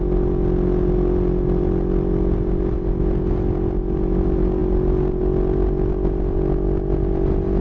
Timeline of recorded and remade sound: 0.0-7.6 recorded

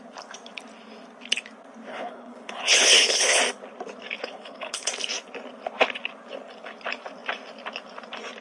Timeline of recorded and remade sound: 0.0-1.9 recorded; 1.9-3.4 remade; 3.4-4.2 recorded; 4.2-4.9 remade; 4.9-8.4 recorded

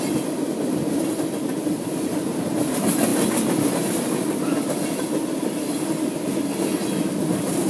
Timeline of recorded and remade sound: 0.0-7.7 recorded

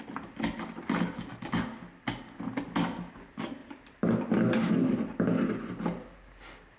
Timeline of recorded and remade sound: 0.0-6.8 recorded

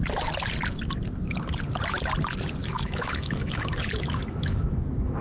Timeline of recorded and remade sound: 0.0-2.6 recorded; 2.6-5.2 remade

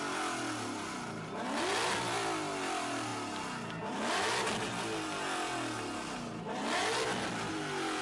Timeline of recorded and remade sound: 0.0-8.0 recorded

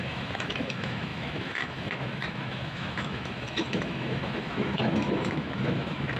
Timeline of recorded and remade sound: 0.0-6.2 remade